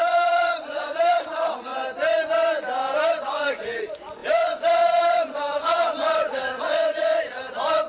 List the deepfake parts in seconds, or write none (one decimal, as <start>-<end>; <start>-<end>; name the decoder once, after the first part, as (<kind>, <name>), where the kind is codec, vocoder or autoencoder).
0.0-1.7 (vocoder, Vocos); 3.1-7.9